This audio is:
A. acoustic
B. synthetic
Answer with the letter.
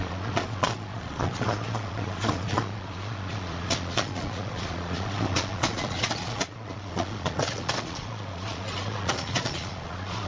B